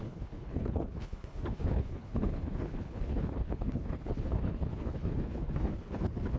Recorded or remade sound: remade